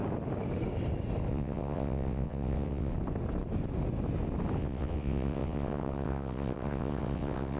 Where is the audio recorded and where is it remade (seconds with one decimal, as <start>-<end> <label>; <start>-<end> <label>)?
0.0-1.3 recorded; 1.3-2.9 remade; 2.9-4.6 recorded; 4.6-7.6 remade